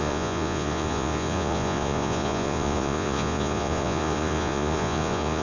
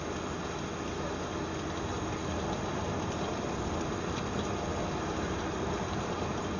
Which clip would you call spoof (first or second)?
first